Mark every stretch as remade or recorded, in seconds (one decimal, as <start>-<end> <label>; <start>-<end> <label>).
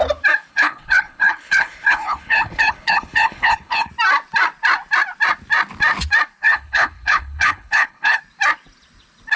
0.0-0.5 recorded; 0.5-3.9 remade; 3.9-6.4 recorded; 6.4-8.2 remade; 8.2-9.4 recorded